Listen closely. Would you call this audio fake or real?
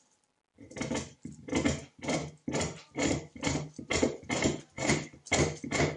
real